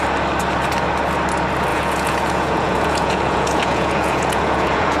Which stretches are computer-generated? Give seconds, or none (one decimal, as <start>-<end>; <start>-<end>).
1.7-5.0